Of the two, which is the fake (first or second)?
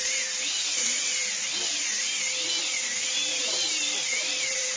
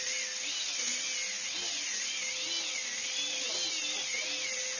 first